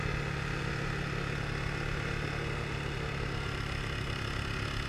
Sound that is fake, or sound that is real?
real